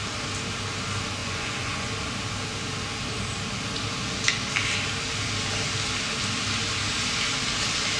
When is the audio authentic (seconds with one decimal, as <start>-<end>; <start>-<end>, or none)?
0.0-1.2; 1.9-8.0